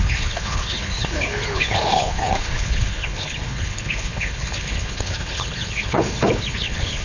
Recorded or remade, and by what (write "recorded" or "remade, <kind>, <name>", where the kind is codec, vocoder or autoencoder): remade, codec, HILCodec